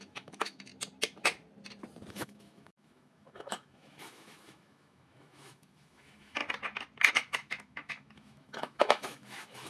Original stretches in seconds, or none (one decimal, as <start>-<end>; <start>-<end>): 0.7-2.1; 6.4-7.1